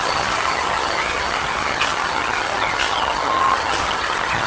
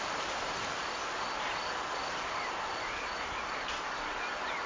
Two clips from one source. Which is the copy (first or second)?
first